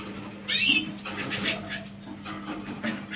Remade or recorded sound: recorded